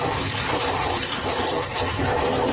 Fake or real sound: real